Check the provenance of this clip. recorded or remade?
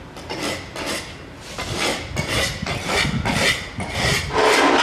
recorded